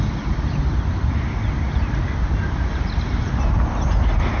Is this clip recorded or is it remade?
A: recorded